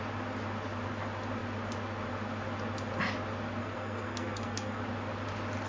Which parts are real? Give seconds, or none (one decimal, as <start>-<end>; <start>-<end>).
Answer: 0.0-3.6; 4.8-5.7